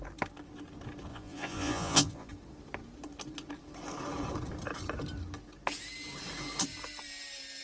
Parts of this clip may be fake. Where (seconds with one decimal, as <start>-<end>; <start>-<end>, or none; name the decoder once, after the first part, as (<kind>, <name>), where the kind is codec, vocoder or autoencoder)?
1.1-2.3 (vocoder, Vocos)